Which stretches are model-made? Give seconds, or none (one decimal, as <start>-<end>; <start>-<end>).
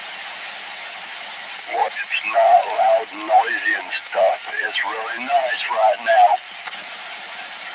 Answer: none